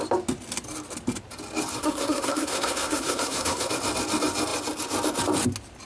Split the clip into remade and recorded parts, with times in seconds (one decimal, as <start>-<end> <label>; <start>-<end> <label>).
0.0-1.8 recorded; 1.8-3.7 remade; 3.7-5.9 recorded